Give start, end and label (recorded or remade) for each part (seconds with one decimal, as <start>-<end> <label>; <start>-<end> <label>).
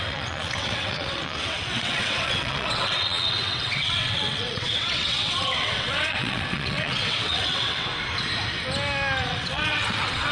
0.0-7.9 remade; 7.9-9.2 recorded; 9.2-10.3 remade